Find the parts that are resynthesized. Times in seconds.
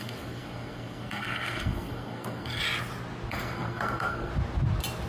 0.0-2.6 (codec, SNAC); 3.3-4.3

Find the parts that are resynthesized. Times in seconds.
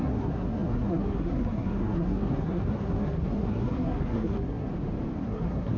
0.0-4.7 (codec, SNAC); 5.2-5.8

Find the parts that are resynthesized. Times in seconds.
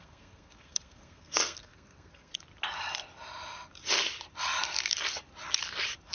0.0-2.3 (codec, SNAC)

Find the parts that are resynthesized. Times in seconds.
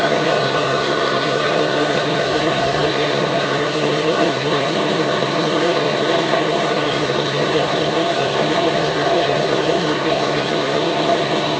0.0-11.6 (codec, SNAC)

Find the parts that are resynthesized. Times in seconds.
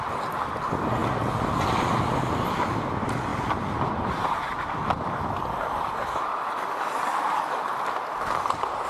none